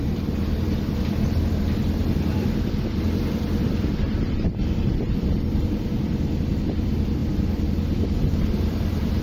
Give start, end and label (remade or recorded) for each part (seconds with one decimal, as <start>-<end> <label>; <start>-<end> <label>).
0.0-9.2 remade